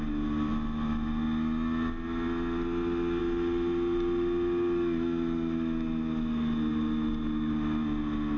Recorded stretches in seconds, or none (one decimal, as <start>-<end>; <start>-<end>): 0.0-8.4